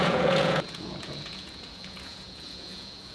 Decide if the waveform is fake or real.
fake